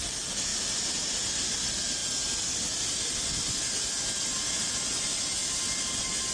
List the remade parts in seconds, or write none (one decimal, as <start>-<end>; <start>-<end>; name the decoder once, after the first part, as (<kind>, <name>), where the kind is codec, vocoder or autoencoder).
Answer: none